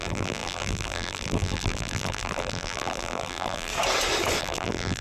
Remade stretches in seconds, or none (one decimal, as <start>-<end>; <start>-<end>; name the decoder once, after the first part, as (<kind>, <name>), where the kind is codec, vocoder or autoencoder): 0.0-3.7 (vocoder, BigVGAN v2); 4.4-5.0